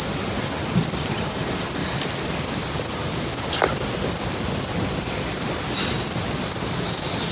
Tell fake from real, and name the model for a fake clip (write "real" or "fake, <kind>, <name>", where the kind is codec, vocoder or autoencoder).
real